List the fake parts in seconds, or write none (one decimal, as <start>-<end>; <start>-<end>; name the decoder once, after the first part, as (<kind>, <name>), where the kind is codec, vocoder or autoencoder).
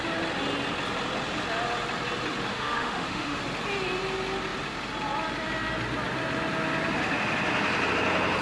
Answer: 2.5-3.4 (autoencoder, DAC-VAE)